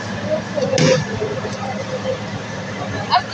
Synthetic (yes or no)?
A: no